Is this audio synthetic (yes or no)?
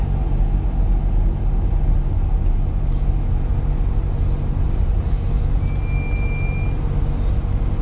no